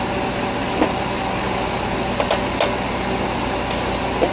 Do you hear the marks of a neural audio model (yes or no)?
no